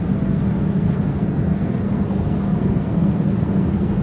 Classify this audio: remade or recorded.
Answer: remade